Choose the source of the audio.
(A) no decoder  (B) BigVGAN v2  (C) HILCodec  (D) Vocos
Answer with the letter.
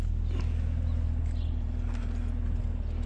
A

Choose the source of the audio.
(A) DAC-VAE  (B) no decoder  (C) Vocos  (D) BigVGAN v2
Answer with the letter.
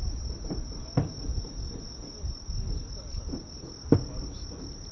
B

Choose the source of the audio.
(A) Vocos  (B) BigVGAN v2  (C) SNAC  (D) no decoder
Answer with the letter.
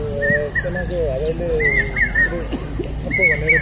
D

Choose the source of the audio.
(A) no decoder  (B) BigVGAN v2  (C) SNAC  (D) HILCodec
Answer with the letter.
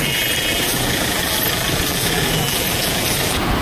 B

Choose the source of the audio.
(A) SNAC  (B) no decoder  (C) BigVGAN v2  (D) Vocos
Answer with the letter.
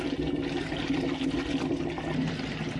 B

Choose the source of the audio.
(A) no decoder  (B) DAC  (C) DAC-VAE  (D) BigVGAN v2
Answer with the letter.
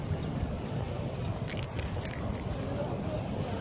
A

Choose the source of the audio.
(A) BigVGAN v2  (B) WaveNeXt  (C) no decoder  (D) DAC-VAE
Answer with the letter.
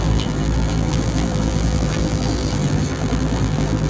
A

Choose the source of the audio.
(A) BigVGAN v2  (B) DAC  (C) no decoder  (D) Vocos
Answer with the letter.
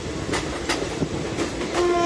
A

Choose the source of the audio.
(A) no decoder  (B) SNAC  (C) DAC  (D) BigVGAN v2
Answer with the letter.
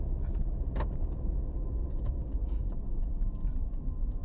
D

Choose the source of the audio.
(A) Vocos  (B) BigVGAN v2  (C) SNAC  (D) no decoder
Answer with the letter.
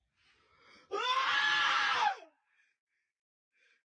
B